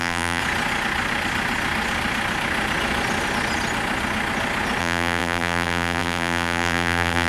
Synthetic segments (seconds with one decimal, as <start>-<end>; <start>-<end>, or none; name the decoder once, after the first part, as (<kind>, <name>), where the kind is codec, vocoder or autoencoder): 0.0-0.4 (vocoder, BigVGAN v2); 4.8-7.3